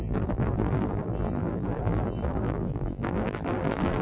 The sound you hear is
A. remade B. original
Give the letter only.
A